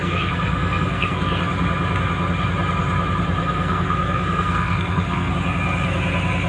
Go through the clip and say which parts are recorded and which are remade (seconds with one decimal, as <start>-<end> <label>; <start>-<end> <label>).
0.0-1.5 remade; 1.5-3.4 recorded; 3.4-5.3 remade; 5.3-6.5 recorded